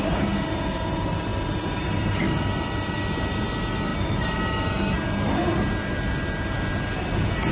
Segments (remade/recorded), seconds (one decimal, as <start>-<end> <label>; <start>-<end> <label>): 0.0-7.5 recorded